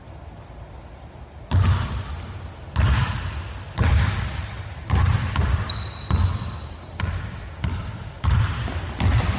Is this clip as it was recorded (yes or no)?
yes